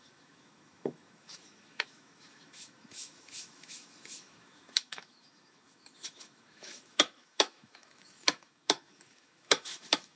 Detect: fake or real fake